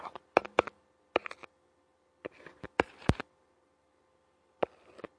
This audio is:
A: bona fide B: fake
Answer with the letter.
A